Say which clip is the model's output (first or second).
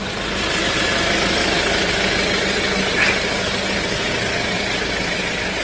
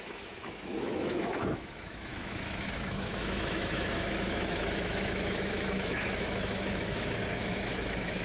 second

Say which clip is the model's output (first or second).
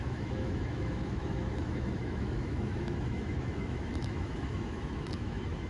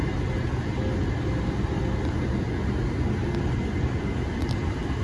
first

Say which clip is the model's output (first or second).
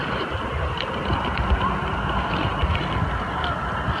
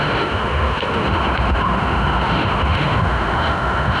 second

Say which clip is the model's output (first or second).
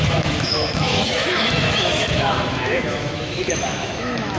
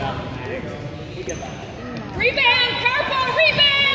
first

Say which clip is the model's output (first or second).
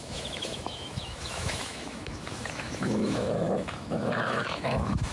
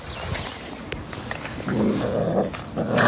first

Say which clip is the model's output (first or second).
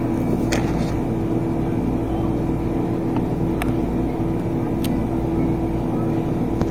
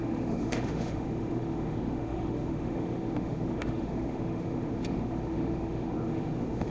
second